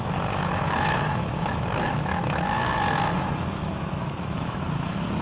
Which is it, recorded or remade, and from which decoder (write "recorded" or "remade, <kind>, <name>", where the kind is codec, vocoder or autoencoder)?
remade, autoencoder, DAC-VAE